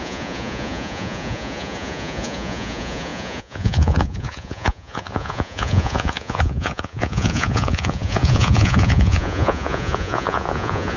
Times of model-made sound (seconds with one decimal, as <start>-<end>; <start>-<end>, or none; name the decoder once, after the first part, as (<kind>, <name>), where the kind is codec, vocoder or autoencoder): 0.0-11.0 (vocoder, Vocos)